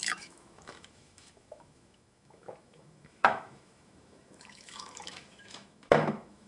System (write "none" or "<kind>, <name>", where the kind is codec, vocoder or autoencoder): autoencoder, DAC-VAE